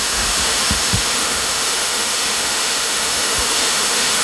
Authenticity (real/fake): fake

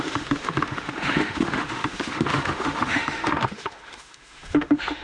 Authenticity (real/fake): fake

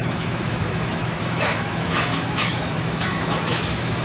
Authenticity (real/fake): fake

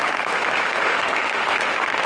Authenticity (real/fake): fake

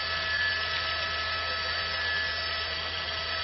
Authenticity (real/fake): real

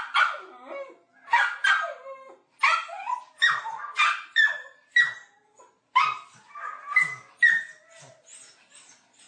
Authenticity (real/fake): real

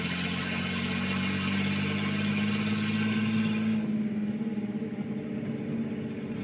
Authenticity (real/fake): real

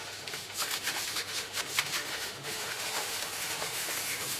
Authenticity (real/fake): fake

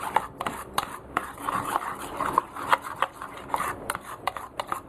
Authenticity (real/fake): real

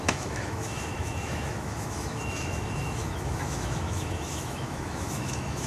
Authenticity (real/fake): fake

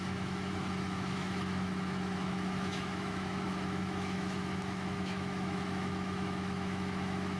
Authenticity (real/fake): fake